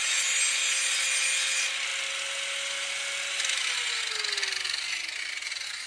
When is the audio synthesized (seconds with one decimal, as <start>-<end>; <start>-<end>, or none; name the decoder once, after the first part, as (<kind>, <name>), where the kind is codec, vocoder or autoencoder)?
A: none